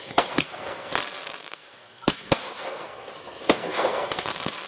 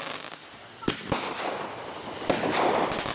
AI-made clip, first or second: first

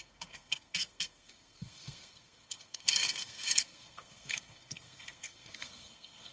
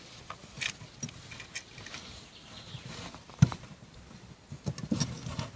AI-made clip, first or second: first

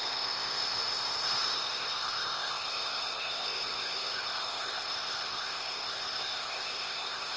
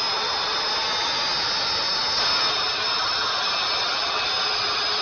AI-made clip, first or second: first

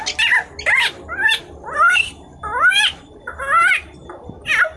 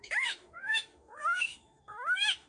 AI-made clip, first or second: second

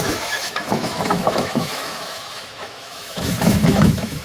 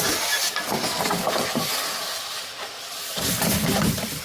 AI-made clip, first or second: first